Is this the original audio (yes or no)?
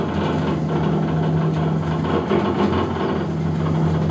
yes